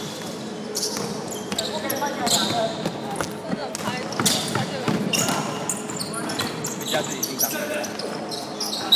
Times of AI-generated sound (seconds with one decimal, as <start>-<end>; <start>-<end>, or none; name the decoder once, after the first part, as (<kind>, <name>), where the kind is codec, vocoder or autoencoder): none